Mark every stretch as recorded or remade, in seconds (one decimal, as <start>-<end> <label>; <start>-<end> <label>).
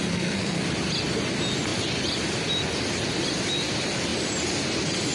0.0-0.6 remade; 0.6-5.1 recorded